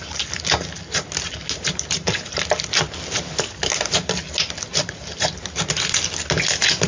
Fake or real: real